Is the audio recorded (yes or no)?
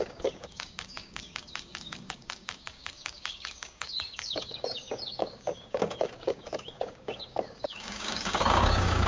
no